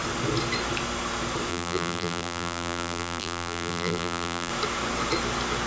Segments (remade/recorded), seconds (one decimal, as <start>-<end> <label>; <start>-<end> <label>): 0.0-1.5 recorded; 1.5-4.5 remade; 4.5-5.7 recorded